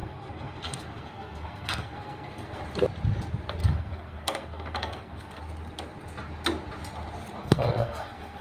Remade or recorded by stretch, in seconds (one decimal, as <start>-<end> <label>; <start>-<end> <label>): 0.0-2.6 remade; 2.6-3.6 recorded; 3.6-5.4 remade; 5.4-7.4 recorded; 7.4-8.4 remade